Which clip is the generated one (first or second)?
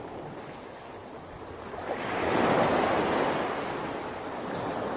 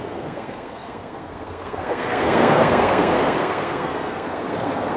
second